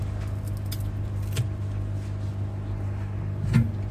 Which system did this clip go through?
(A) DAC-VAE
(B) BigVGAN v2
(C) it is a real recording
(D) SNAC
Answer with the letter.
C